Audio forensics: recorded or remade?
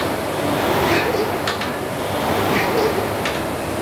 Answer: recorded